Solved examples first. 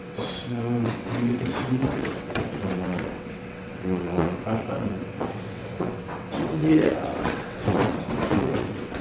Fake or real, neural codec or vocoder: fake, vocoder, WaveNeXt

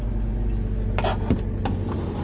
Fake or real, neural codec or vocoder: real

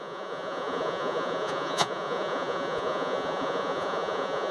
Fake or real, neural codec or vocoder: fake, vocoder, Vocos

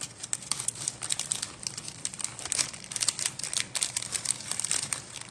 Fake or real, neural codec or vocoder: real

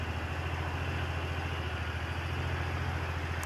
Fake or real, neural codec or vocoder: real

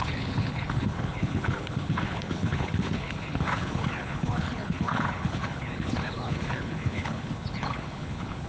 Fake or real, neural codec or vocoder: fake, codec, HILCodec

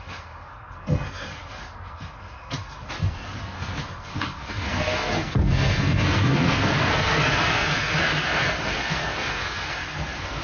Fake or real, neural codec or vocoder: fake, codec, SNAC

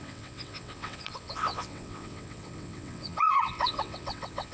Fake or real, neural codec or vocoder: fake, vocoder, WaveNeXt